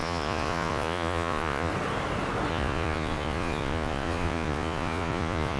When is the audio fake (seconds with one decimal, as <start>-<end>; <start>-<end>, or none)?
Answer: 0.0-1.7; 2.5-5.6